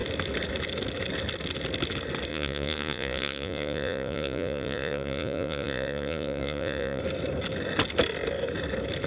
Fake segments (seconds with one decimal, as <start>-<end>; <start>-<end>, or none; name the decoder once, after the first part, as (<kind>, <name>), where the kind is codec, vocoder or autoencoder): 2.3-7.0 (vocoder, Vocos)